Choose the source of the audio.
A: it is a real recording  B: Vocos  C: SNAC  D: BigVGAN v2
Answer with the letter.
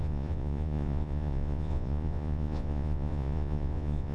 B